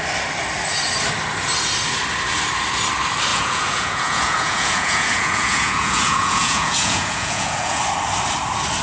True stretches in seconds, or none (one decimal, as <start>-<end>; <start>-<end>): 0.0-3.3; 7.8-8.8